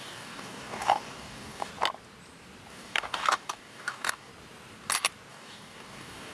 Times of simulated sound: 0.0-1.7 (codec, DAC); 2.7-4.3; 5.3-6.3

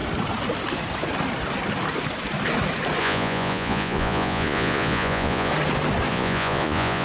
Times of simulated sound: 3.0-5.5 (vocoder, Vocos); 6.1-7.0